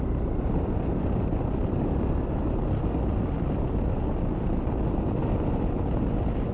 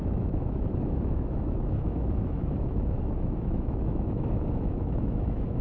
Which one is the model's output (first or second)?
second